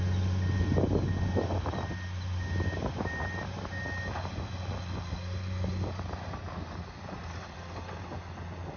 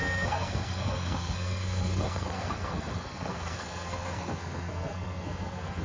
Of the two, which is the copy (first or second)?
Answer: second